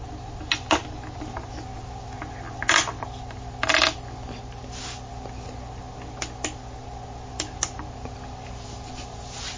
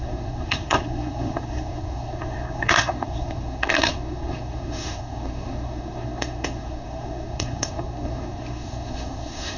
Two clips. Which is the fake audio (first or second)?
second